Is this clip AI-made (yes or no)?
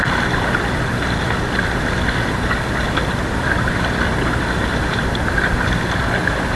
no